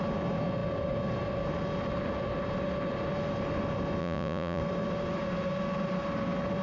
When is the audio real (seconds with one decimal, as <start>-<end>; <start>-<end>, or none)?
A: 0.0-4.0; 4.6-6.6